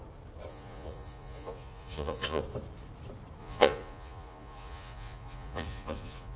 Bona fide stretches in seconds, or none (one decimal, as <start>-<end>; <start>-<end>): 0.0-0.5; 2.4-3.4